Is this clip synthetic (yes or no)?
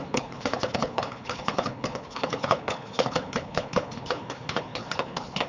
yes